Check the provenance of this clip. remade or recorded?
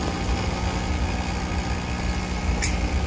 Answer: recorded